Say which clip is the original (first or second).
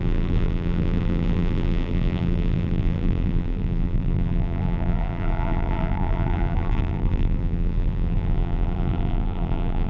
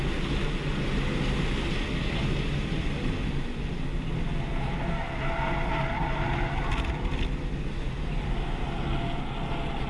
second